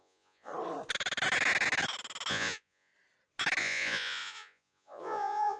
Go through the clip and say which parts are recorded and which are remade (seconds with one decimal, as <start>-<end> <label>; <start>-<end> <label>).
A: 0.0-0.5 remade; 0.5-2.3 recorded; 2.3-2.9 remade; 2.9-3.6 recorded; 3.6-5.6 remade